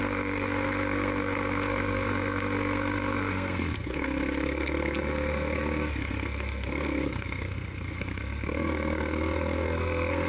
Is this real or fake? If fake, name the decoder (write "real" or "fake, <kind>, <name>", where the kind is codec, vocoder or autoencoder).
fake, codec, SNAC